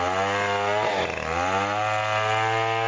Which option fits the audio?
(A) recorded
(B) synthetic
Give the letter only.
A